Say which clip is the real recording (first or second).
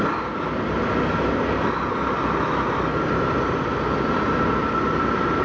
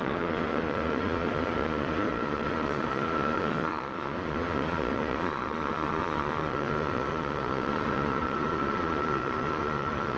first